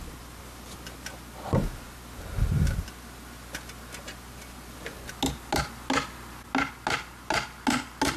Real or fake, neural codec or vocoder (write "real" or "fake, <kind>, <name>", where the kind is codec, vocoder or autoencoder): real